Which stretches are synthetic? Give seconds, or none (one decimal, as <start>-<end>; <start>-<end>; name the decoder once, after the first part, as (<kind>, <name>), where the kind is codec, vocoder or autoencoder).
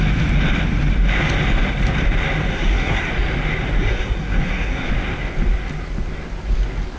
2.5-3.1 (codec, SNAC); 3.8-4.9